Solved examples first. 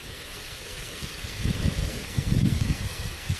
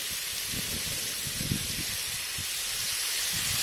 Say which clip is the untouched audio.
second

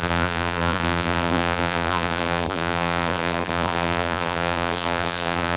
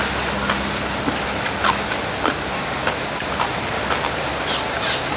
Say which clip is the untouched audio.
second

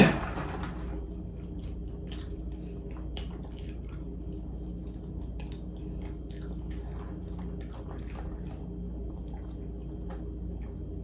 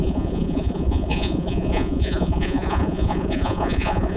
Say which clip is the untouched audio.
first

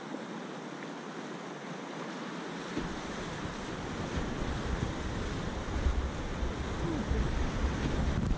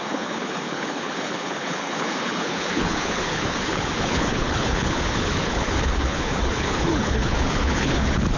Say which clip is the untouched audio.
first